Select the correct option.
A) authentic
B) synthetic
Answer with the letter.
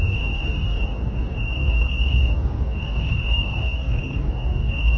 B